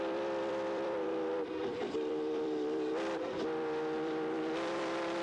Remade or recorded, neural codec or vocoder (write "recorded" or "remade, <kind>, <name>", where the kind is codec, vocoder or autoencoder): remade, vocoder, BigVGAN v2